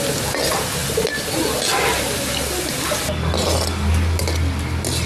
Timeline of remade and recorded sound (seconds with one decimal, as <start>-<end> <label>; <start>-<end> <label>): 0.0-5.1 recorded